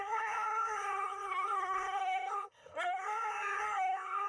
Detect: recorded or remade remade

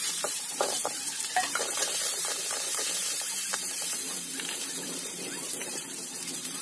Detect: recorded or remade remade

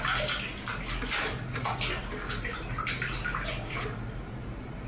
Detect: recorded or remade recorded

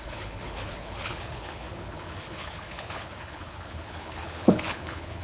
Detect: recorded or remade remade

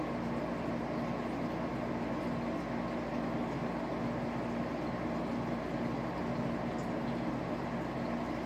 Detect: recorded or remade recorded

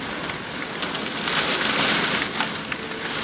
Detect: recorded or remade recorded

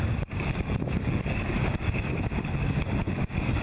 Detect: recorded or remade remade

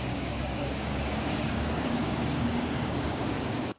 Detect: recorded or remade remade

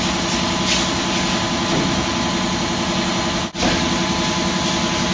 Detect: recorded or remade recorded